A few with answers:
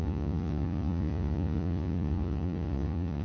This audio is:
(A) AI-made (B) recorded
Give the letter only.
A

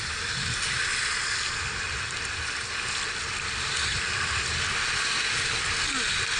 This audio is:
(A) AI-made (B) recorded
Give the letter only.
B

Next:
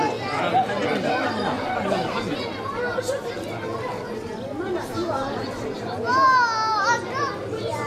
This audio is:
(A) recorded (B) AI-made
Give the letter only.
A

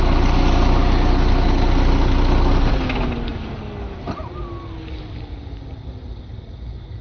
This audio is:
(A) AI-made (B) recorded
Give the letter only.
B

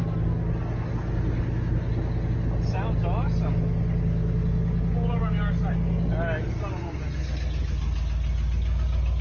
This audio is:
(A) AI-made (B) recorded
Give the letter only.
B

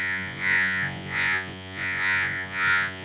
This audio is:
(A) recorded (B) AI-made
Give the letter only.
B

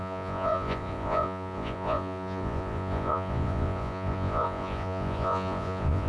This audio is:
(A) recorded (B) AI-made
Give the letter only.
B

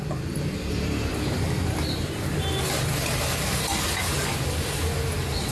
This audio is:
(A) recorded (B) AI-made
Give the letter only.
A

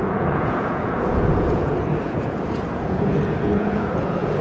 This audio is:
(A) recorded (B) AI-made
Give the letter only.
B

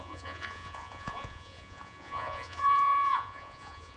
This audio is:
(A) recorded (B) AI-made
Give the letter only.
B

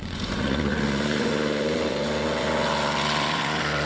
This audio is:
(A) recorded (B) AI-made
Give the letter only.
B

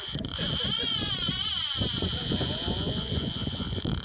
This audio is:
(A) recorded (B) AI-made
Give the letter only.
B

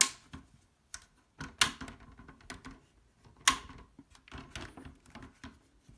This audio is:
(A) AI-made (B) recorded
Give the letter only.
B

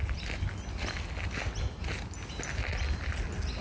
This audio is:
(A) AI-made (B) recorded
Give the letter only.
B